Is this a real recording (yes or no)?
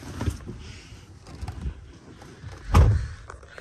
yes